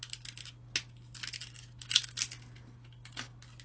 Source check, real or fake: real